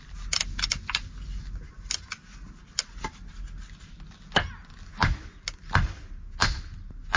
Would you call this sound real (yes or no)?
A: yes